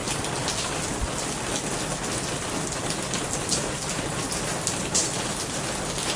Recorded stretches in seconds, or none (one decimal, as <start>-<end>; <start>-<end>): 0.0-6.2